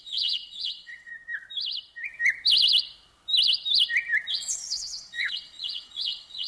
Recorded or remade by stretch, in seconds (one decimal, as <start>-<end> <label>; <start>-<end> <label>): 0.0-1.1 remade; 1.1-4.3 recorded; 4.3-6.5 remade